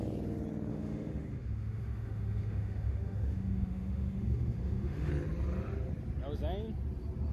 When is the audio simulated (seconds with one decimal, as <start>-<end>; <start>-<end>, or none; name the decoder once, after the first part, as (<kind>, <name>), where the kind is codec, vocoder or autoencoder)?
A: 0.7-5.1 (autoencoder, DAC-VAE)